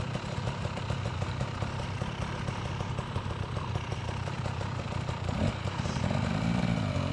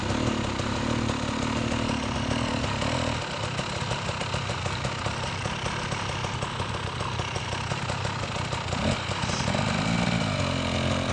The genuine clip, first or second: second